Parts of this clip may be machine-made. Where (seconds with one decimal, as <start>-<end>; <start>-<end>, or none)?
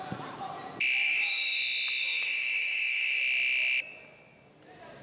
1.0-1.6; 2.0-3.2